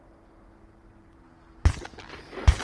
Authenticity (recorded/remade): recorded